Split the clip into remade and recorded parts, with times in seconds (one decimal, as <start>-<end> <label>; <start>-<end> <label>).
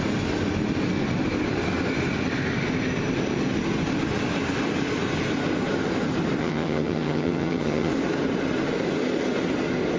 0.0-6.4 recorded; 6.4-7.9 remade; 7.9-10.0 recorded